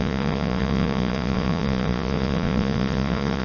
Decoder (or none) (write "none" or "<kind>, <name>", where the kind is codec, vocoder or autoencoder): vocoder, Vocos